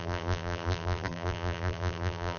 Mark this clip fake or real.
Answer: fake